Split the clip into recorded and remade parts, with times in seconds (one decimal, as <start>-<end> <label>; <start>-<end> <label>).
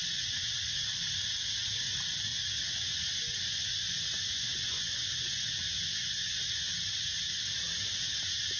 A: 0.0-0.5 remade; 0.5-2.3 recorded; 2.3-6.8 remade; 6.8-8.6 recorded